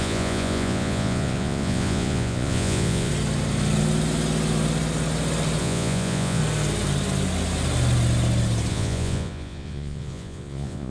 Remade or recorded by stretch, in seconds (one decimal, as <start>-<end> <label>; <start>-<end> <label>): 0.0-3.1 remade; 3.1-5.6 recorded; 5.6-6.4 remade; 6.4-8.7 recorded; 8.7-10.9 remade